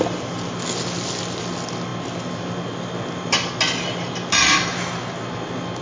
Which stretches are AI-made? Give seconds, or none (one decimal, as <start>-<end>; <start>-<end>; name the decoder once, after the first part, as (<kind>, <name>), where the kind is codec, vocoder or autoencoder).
none